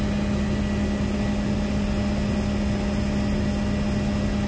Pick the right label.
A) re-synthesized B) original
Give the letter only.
B